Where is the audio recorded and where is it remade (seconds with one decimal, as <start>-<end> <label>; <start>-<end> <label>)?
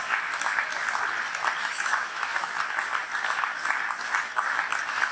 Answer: 0.0-1.6 recorded; 1.6-2.6 remade; 2.6-5.1 recorded